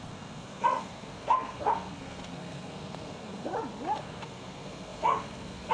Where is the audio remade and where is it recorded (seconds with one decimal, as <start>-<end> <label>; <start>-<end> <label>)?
0.0-3.5 remade; 3.5-4.0 recorded; 4.0-5.7 remade